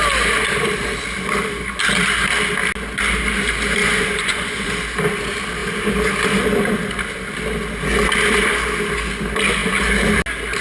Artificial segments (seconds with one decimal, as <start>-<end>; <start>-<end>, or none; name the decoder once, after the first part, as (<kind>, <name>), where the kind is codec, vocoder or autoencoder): 3.8-4.7 (vocoder, Vocos)